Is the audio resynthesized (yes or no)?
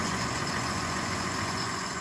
yes